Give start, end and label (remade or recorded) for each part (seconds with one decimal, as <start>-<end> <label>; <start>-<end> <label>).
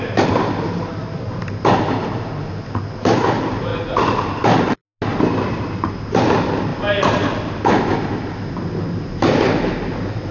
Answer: 0.0-10.3 recorded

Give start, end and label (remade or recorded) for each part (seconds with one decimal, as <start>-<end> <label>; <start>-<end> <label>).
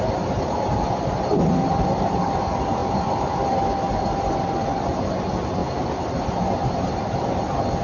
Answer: 0.0-7.8 remade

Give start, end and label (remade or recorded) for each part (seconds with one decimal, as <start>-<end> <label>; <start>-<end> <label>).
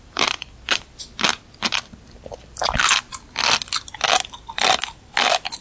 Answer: 0.0-1.1 remade; 1.1-4.5 recorded; 4.5-5.6 remade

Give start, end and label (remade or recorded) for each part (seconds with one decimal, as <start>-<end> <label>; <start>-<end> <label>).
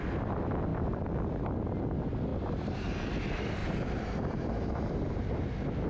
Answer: 0.0-0.7 recorded; 0.7-1.3 remade; 1.3-2.3 recorded; 2.3-3.1 remade; 3.1-3.6 recorded; 3.6-5.3 remade; 5.3-5.9 recorded